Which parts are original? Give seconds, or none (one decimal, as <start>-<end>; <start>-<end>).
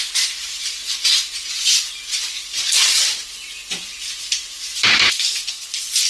none